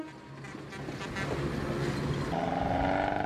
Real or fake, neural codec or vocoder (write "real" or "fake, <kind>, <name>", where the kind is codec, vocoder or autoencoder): real